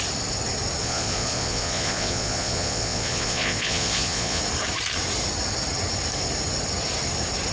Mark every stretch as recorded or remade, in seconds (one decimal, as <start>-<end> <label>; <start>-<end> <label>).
0.0-0.8 recorded; 0.8-4.4 remade; 4.4-7.5 recorded